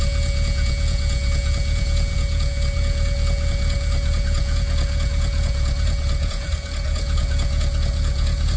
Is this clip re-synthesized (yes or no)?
yes